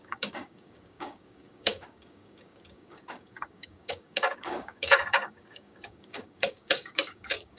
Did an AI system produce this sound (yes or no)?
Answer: yes